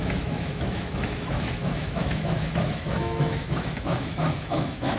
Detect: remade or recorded remade